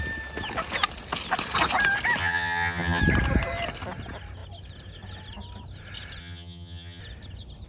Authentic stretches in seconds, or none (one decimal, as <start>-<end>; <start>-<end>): 0.0-2.2; 3.0-6.2; 7.0-7.7